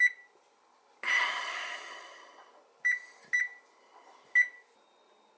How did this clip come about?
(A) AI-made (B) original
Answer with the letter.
B